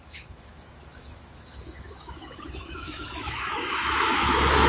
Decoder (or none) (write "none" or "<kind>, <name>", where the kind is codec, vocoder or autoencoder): autoencoder, DAC-VAE